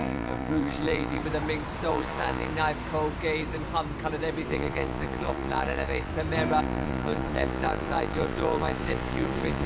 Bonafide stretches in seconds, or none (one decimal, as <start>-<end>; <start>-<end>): 1.2-1.9; 2.5-4.5; 6.1-6.6